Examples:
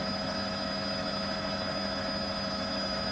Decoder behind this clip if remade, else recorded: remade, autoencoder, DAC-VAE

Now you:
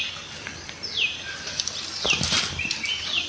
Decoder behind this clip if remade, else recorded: remade, vocoder, BigVGAN v2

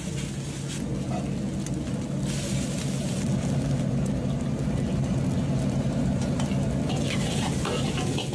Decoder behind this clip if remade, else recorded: recorded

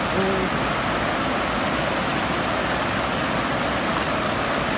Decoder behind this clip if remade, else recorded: recorded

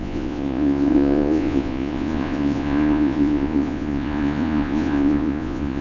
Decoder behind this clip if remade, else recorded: remade, vocoder, Vocos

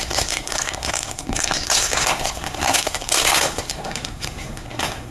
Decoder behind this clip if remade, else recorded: remade, codec, SNAC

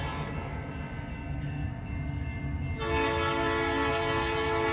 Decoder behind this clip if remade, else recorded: recorded